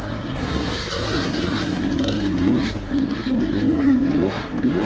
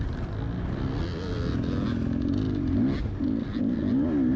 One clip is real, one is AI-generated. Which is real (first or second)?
second